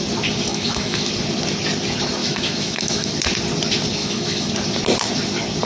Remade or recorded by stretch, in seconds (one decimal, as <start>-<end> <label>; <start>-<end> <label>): 0.0-0.5 recorded; 0.5-1.1 remade; 1.1-2.2 recorded; 2.2-3.1 remade; 3.1-4.0 recorded; 4.0-4.5 remade; 4.5-5.7 recorded